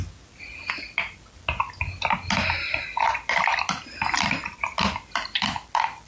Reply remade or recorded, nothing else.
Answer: recorded